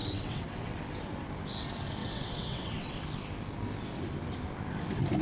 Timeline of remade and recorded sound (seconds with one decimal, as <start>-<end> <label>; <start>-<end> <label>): 0.0-0.8 remade; 0.8-2.0 recorded; 2.0-2.9 remade; 2.9-5.2 recorded

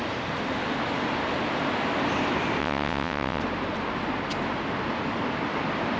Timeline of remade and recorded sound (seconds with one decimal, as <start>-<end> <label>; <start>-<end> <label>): 0.0-2.6 recorded; 2.6-3.4 remade; 3.4-6.0 recorded

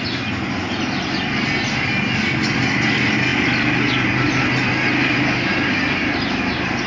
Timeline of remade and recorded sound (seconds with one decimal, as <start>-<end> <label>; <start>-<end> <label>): 0.0-6.9 recorded